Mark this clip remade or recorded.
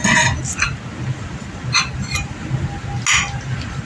recorded